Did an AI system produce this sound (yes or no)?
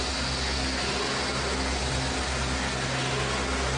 no